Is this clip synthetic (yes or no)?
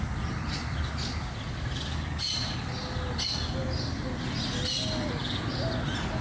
no